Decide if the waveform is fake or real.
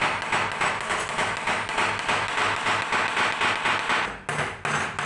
real